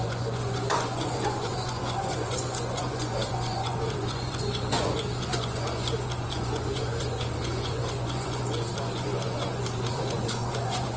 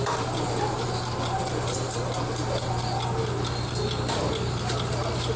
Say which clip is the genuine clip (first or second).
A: second